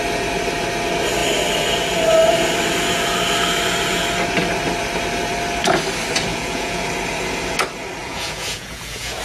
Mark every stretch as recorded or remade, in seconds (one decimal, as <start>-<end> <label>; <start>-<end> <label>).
0.0-6.3 recorded; 6.3-6.8 remade; 6.8-8.0 recorded; 8.0-9.2 remade